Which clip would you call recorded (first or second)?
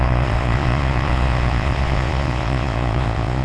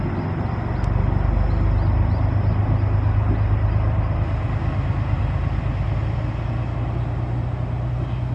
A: second